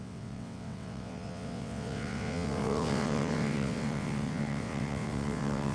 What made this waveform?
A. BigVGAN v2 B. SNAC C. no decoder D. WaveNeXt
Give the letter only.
D